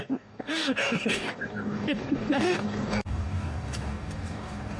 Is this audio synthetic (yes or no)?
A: yes